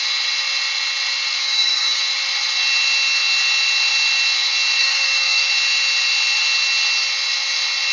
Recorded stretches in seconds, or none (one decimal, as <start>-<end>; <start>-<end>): 0.0-1.4; 2.0-4.8; 5.5-7.9